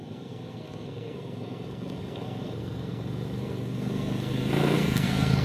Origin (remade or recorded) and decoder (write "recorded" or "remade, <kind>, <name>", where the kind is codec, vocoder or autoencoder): remade, codec, SNAC